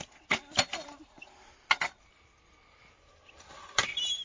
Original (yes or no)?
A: yes